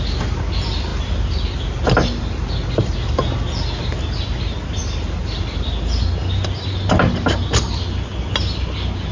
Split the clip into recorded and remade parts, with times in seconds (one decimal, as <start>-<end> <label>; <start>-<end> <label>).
0.0-9.1 recorded

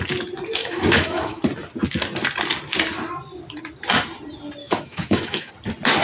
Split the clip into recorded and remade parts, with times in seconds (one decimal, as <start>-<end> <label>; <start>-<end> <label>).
0.0-0.6 recorded; 0.6-1.4 remade; 1.4-4.6 recorded; 4.6-5.5 remade; 5.5-6.0 recorded

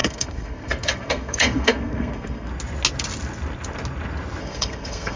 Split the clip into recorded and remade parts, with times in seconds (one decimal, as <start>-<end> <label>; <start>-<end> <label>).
0.0-2.5 remade; 2.5-4.4 recorded; 4.4-5.2 remade

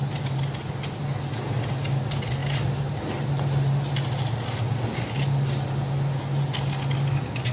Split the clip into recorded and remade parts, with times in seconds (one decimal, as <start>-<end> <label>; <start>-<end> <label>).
0.0-7.5 recorded

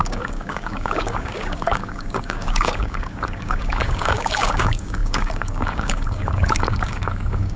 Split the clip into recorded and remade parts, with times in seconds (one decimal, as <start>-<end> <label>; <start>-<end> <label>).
0.0-7.6 remade

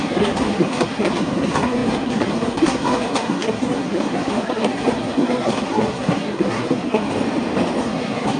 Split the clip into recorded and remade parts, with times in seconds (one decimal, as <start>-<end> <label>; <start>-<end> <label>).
0.0-7.1 remade; 7.1-7.8 recorded; 7.8-8.4 remade

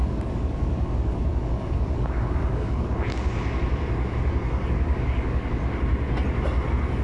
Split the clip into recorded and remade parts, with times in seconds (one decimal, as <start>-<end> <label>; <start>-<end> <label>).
0.0-3.3 remade; 3.3-4.1 recorded; 4.1-5.6 remade; 5.6-7.0 recorded

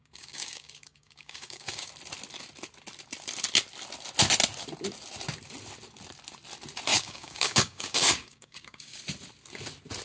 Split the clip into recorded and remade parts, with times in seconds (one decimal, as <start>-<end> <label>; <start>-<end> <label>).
0.0-1.9 remade; 1.9-6.9 recorded; 6.9-9.0 remade; 9.0-10.0 recorded